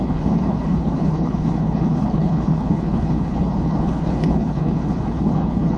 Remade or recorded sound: remade